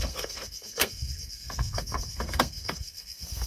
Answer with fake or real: fake